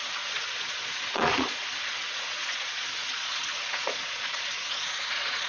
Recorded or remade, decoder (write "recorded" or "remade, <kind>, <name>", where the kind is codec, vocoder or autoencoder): remade, vocoder, Vocos